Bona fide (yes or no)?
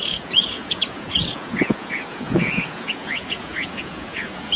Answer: no